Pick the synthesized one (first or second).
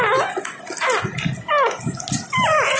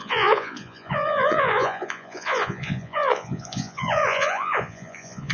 second